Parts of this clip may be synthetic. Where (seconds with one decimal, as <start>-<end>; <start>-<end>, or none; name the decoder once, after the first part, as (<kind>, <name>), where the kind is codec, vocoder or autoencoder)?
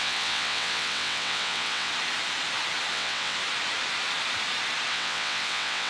0.0-1.9 (vocoder, WaveNeXt); 2.9-3.4; 4.9-5.9